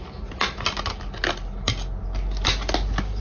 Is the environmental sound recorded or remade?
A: recorded